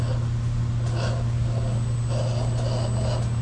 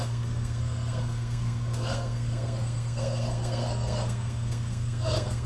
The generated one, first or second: second